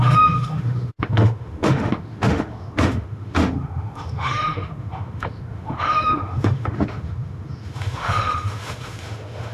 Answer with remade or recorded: remade